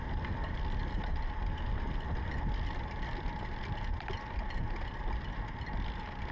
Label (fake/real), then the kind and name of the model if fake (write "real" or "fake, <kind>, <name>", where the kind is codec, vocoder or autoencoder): real